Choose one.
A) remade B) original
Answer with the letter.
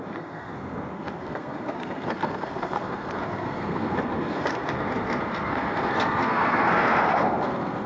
A